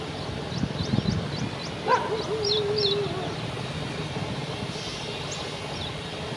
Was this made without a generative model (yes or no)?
yes